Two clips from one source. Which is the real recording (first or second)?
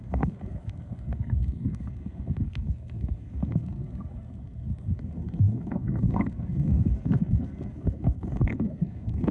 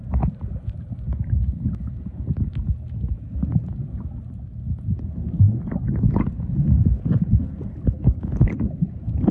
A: second